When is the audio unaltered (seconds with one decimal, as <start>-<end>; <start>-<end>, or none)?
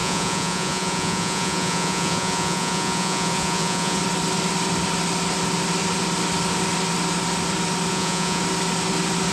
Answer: 4.0-7.9; 8.4-9.3